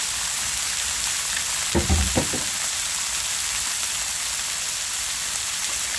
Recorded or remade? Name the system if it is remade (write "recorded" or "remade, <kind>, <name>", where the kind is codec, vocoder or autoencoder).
recorded